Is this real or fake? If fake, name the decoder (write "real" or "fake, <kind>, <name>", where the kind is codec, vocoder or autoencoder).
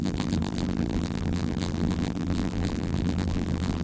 fake, vocoder, BigVGAN v2